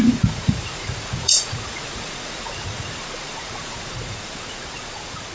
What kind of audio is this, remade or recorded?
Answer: remade